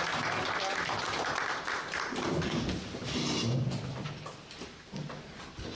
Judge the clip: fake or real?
real